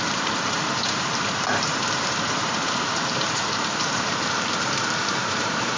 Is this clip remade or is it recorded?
remade